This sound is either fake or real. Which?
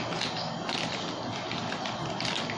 real